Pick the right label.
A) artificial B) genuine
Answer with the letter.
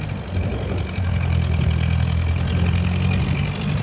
B